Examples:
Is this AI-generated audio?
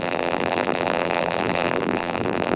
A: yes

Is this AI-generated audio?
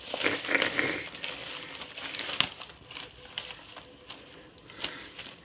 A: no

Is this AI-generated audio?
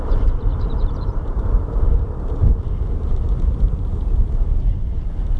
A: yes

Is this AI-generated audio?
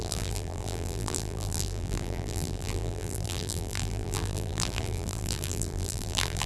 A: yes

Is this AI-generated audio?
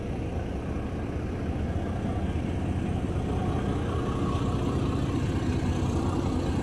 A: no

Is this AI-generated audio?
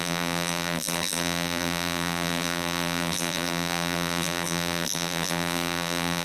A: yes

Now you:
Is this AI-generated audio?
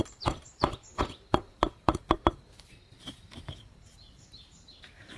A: yes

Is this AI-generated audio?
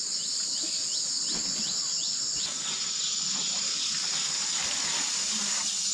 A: no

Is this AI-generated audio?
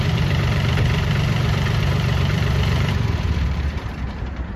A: yes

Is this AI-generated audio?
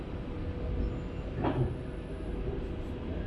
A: no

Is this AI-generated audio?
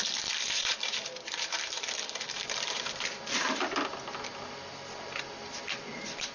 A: yes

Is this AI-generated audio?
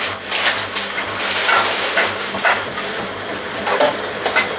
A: no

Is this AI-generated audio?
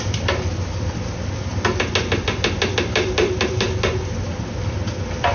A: no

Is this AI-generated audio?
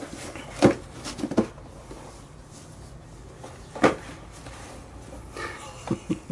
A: no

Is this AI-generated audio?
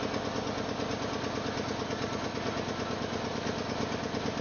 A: no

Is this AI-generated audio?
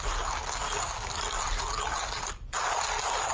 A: no